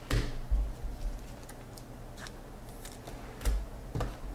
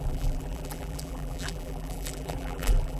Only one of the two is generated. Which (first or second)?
second